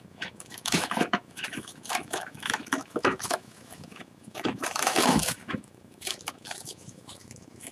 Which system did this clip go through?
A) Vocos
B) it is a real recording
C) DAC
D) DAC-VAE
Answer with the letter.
D